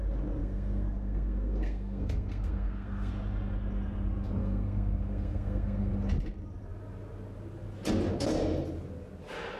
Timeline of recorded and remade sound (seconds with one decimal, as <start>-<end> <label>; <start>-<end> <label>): 0.0-0.4 recorded; 0.4-3.1 remade; 3.1-4.4 recorded; 4.4-5.9 remade; 5.9-9.6 recorded